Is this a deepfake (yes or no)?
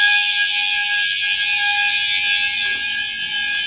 no